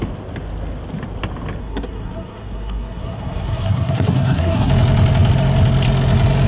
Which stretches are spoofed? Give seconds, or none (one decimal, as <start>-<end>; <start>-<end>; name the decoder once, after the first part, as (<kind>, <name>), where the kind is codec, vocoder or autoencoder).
1.6-4.7 (codec, SNAC)